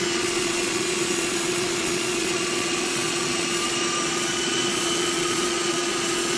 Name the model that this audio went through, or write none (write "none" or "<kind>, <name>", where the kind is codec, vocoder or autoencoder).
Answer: vocoder, Vocos